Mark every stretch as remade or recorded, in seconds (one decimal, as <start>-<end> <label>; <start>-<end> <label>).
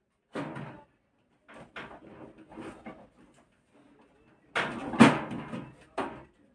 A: 0.0-6.5 recorded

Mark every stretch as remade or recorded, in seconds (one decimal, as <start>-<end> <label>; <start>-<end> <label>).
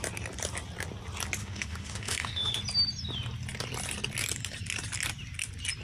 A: 0.0-1.4 recorded; 1.4-2.6 remade; 2.6-5.8 recorded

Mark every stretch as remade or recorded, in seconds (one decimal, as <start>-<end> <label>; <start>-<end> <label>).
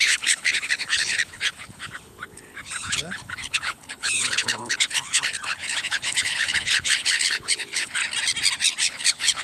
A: 0.0-8.0 remade; 8.0-8.8 recorded; 8.8-9.4 remade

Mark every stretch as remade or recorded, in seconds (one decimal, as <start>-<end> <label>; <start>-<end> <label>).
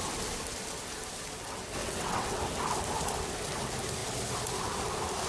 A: 0.0-1.8 recorded; 1.8-2.4 remade; 2.4-5.3 recorded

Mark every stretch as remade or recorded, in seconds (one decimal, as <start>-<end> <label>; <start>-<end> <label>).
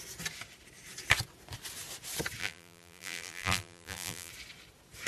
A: 0.0-2.4 recorded; 2.4-4.3 remade; 4.3-5.1 recorded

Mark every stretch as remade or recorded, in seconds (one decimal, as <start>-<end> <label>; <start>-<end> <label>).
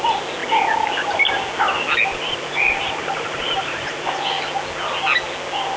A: 0.0-2.1 recorded; 2.1-4.3 remade; 4.3-5.8 recorded